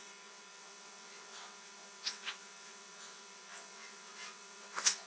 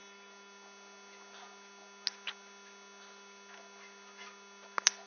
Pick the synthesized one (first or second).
first